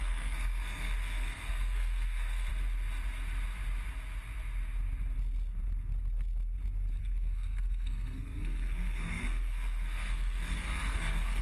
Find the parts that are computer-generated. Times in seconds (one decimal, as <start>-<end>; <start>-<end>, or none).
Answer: 0.0-2.5; 7.0-11.4